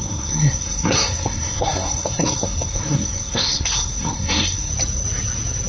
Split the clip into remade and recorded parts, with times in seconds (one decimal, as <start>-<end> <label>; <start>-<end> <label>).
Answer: 0.0-4.7 remade; 4.7-5.7 recorded